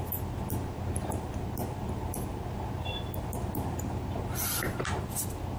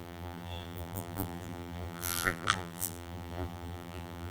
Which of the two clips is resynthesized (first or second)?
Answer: second